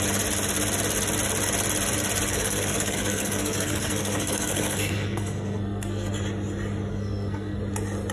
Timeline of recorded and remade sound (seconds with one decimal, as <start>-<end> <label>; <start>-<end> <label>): 0.0-2.3 recorded; 2.3-6.1 remade; 6.1-6.9 recorded; 6.9-7.6 remade; 7.6-8.1 recorded